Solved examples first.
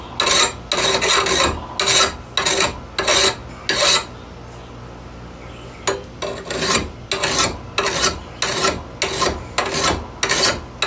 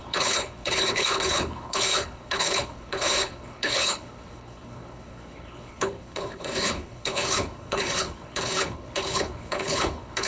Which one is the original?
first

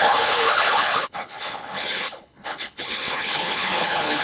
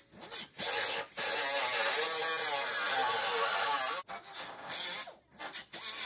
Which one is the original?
second